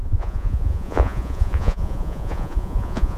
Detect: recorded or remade remade